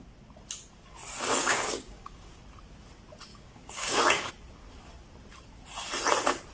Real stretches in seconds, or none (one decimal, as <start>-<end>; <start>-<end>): 0.0-1.4; 2.4-3.3; 4.3-6.5